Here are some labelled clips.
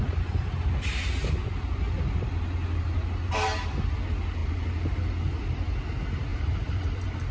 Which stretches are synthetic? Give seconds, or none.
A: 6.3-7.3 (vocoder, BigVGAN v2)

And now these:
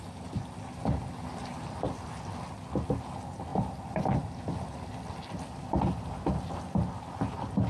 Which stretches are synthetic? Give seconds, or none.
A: 1.5-2.1 (vocoder, BigVGAN v2); 3.5-6.1

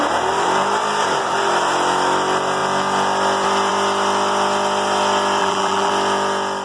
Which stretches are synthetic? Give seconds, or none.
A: 5.4-5.9 (vocoder, BigVGAN v2)

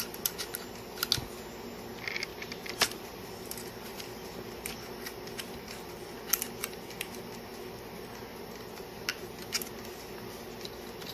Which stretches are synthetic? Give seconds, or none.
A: 2.3-4.0 (vocoder, BigVGAN v2); 9.1-9.7

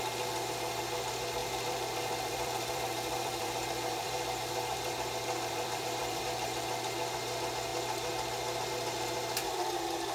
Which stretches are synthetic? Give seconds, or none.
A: 1.4-6.2 (vocoder, BigVGAN v2)

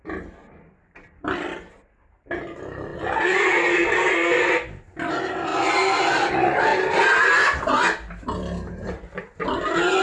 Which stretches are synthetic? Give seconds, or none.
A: none

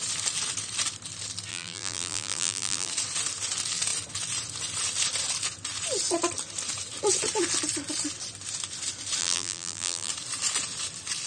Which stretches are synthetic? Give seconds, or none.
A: 1.5-2.9 (vocoder, BigVGAN v2); 9.2-10.1